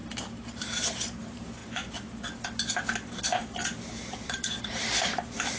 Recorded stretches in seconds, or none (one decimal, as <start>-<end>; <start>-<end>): 0.0-0.6; 1.6-3.2; 3.6-4.2